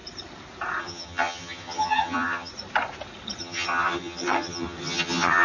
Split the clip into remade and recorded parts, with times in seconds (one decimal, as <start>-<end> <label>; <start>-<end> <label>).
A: 0.0-0.8 recorded; 0.8-2.5 remade; 2.5-3.4 recorded; 3.4-5.4 remade